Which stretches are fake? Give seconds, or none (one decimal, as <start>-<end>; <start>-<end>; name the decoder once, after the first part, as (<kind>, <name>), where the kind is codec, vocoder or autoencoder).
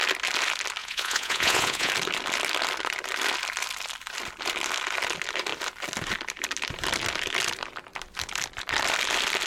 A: 0.8-1.9 (vocoder, Vocos)